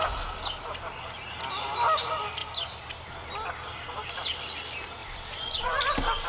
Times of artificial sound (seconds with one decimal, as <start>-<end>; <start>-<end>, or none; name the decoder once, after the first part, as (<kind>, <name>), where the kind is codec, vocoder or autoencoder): 2.4-3.1 (vocoder, BigVGAN v2); 5.0-5.8